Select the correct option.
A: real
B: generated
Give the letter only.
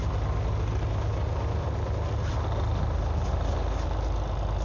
A